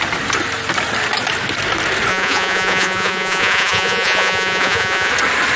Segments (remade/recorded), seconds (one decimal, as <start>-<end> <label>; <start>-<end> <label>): 0.0-2.1 recorded; 2.1-5.1 remade; 5.1-5.6 recorded